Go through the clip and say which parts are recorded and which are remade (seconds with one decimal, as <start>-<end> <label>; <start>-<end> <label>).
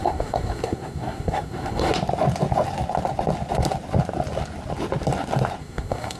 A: 0.0-1.9 remade; 1.9-5.6 recorded; 5.6-6.2 remade